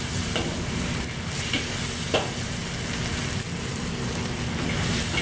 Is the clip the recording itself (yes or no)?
yes